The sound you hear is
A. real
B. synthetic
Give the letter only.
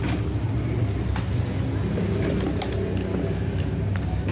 A